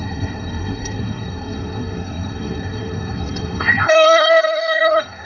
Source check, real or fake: fake